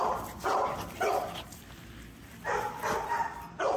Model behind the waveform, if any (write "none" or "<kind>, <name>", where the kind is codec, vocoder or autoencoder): none